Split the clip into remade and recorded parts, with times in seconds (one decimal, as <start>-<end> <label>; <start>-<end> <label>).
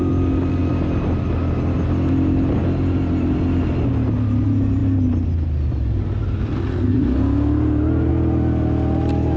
0.0-9.4 recorded